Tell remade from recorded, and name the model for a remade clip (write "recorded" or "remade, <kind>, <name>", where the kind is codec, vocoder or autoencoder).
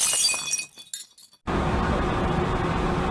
recorded